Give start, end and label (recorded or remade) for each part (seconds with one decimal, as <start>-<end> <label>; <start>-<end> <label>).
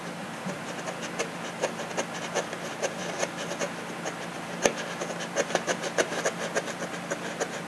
0.0-7.7 recorded